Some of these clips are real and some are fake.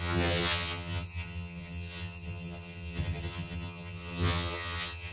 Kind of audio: fake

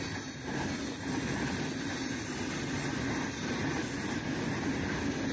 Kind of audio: real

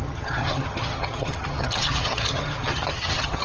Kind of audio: fake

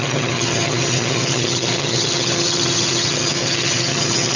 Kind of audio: fake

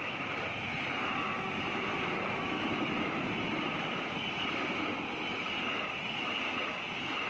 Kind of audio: real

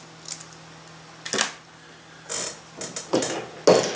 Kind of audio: real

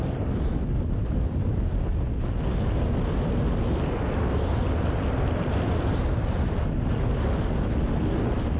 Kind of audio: real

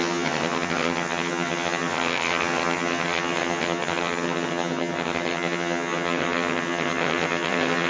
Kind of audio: fake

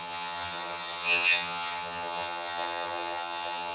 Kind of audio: fake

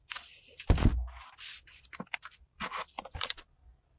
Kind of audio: real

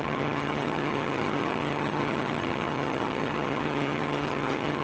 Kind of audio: fake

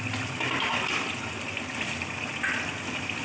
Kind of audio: real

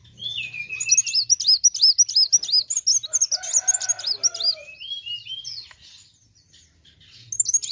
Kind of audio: real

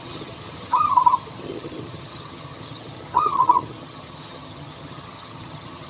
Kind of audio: fake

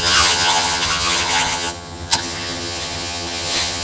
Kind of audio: fake